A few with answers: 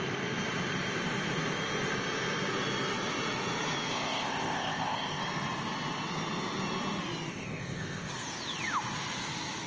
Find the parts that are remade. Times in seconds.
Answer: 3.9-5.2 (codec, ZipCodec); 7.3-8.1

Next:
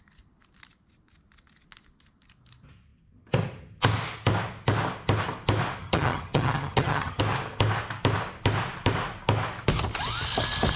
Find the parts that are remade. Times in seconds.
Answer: 5.8-7.2 (vocoder, HiFi-GAN)

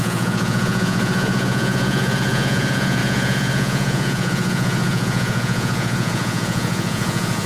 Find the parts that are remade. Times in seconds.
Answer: 0.0-7.5 (vocoder, Vocos)